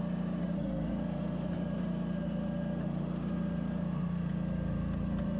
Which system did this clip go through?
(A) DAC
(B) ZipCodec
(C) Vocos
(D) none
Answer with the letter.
D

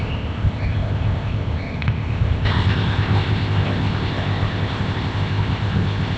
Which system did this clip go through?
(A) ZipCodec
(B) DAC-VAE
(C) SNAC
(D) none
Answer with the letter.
A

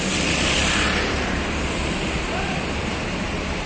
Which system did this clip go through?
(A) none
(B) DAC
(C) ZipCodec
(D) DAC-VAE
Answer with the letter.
A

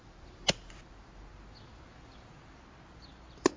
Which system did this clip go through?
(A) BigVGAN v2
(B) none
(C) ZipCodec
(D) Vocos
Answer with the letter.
B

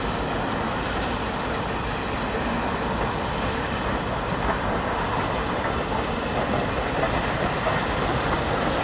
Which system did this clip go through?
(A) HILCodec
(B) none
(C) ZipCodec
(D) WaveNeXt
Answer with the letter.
B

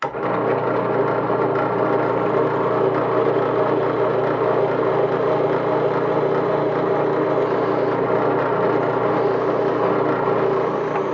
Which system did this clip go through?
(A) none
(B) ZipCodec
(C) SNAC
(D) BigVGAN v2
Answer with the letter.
A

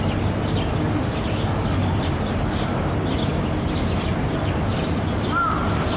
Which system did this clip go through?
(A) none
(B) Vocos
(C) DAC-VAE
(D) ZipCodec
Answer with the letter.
A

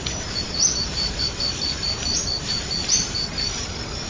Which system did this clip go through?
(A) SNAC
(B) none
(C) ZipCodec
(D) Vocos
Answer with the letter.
B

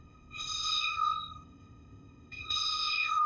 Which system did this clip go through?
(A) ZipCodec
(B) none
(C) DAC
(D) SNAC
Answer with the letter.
A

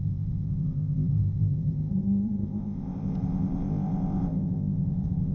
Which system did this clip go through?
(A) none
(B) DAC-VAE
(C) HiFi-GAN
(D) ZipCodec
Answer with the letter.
D